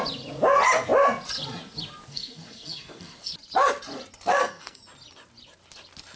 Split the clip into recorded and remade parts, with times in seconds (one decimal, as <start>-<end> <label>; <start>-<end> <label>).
0.0-2.1 recorded; 2.1-3.3 remade; 3.3-4.3 recorded; 4.3-4.8 remade; 4.8-6.2 recorded